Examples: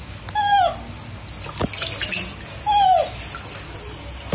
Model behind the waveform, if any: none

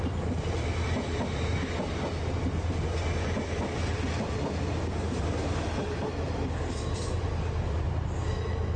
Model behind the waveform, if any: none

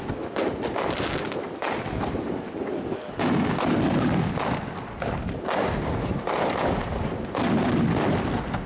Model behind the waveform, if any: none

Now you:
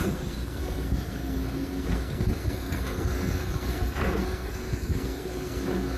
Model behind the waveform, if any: codec, SNAC